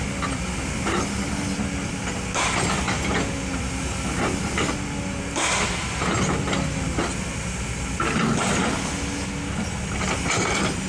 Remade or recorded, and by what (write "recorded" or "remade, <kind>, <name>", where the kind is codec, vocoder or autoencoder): recorded